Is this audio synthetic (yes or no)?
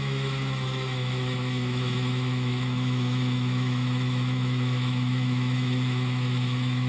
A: yes